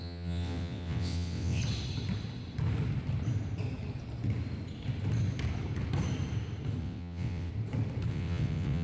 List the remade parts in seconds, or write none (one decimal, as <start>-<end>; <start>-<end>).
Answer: 0.0-1.6; 6.8-7.5; 8.1-8.8